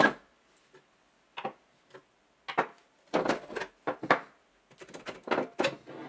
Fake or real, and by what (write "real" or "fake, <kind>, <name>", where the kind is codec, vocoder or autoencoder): real